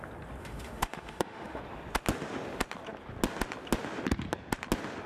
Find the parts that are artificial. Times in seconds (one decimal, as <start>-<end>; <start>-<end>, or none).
0.4-1.6